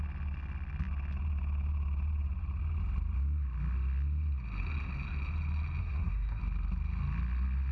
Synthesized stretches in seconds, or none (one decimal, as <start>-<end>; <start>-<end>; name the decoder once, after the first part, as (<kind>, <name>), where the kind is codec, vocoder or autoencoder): 5.8-6.4 (codec, SNAC)